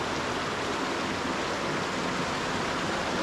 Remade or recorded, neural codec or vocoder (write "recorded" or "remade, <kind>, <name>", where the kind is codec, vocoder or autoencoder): recorded